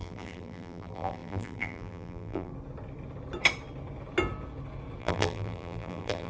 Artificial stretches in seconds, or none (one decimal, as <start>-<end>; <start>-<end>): 0.0-2.5; 5.0-6.3